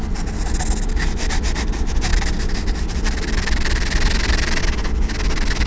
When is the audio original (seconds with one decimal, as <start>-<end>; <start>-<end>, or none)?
0.0-2.1; 4.6-5.7